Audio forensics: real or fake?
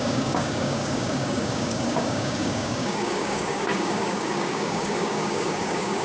fake